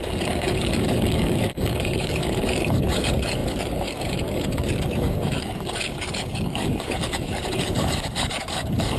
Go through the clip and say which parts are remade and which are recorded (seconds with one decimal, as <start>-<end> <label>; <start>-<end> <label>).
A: 0.0-9.0 remade